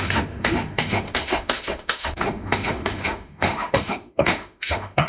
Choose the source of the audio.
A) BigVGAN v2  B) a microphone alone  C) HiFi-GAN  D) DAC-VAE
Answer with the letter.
D